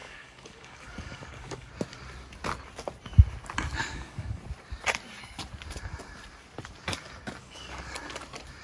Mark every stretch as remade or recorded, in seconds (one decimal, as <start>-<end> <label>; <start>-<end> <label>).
0.0-1.7 remade; 1.7-3.8 recorded; 3.8-4.4 remade; 4.4-7.4 recorded; 7.4-8.0 remade; 8.0-8.6 recorded